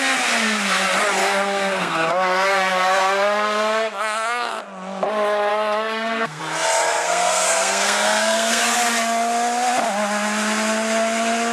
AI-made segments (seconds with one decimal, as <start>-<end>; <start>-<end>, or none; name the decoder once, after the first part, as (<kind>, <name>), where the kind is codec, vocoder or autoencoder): 1.2-4.6 (codec, SNAC); 5.5-6.4; 6.9-8.6